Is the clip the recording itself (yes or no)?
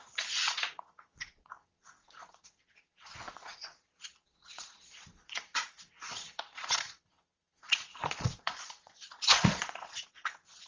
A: no